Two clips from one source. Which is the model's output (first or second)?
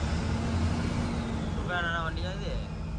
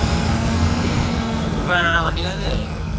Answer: second